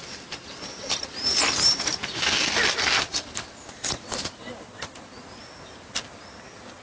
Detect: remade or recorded recorded